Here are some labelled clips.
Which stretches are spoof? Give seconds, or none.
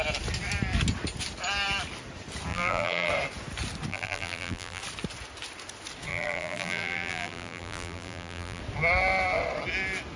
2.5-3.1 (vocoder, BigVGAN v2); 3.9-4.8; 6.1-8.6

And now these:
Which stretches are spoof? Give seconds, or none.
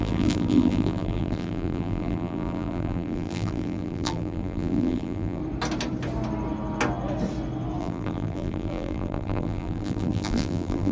0.0-5.4 (vocoder, BigVGAN v2); 7.8-10.9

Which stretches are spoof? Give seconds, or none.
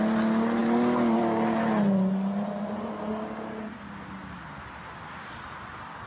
none